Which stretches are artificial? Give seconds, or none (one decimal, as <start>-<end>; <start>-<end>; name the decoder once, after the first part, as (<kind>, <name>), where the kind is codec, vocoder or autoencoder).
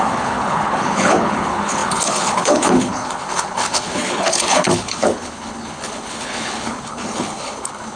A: 0.0-8.0 (codec, HILCodec)